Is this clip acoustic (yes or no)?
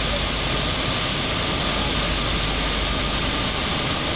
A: yes